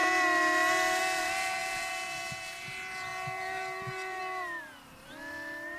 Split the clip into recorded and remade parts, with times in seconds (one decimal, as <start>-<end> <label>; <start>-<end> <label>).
0.0-5.8 remade